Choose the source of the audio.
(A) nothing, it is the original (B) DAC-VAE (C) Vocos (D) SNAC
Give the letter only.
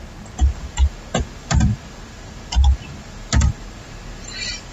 A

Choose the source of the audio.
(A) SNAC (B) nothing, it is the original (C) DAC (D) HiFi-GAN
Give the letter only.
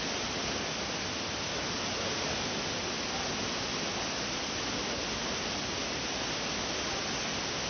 B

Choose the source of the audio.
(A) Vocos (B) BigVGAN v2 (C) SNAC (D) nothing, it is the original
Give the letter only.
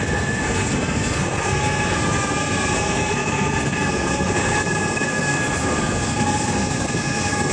C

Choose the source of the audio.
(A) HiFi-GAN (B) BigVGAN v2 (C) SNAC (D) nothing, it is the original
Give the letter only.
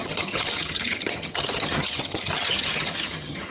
A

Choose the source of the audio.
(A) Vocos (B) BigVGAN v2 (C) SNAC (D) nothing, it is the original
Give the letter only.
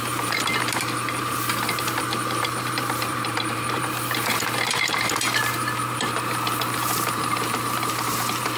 B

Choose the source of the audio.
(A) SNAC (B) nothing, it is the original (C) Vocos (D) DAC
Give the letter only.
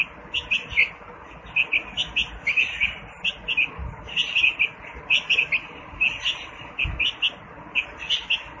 B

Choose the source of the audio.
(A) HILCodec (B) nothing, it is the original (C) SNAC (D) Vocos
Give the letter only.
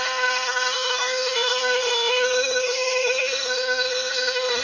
C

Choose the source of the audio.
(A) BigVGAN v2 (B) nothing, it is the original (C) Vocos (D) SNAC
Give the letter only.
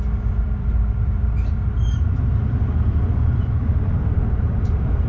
A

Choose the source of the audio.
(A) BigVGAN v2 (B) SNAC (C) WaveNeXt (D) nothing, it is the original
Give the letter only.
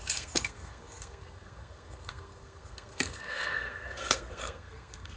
B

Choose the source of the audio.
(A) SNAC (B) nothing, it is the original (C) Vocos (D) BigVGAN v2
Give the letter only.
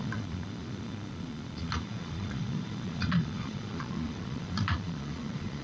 C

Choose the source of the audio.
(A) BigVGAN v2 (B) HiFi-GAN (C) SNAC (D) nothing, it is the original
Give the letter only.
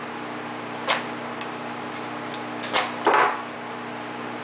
D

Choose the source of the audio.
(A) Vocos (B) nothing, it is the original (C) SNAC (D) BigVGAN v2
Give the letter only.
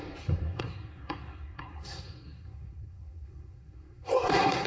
C